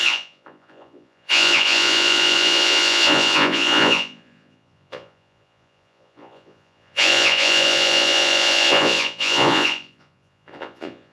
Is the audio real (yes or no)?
no